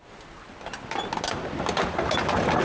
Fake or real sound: real